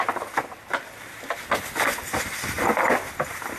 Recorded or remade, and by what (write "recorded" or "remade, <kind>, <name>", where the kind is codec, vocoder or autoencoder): recorded